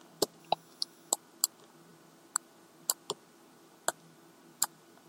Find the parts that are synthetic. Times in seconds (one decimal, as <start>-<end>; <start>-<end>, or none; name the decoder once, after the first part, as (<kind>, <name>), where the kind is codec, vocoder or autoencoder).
0.4-1.1 (autoencoder, DAC-VAE)